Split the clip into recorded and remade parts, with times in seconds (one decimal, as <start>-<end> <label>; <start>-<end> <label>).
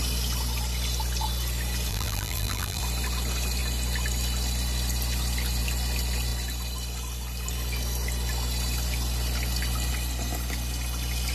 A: 0.0-1.9 recorded; 1.9-2.8 remade; 2.8-11.3 recorded